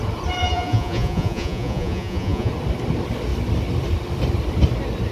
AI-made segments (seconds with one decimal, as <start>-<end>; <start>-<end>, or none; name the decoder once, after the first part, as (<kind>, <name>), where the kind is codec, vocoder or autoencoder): 0.4-2.5 (vocoder, Vocos)